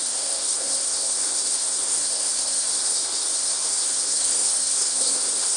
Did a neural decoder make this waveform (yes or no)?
yes